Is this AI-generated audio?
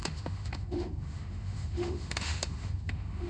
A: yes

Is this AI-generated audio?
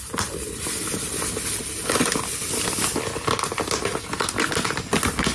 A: no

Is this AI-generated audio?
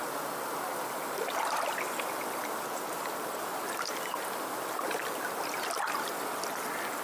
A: no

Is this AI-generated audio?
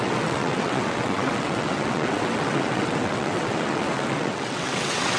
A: yes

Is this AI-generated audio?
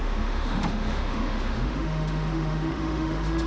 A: yes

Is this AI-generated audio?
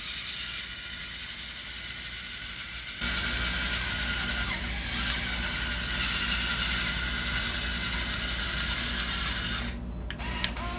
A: no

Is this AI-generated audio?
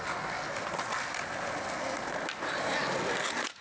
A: no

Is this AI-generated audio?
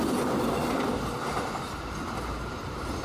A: no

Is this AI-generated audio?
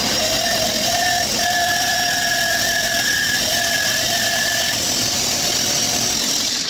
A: yes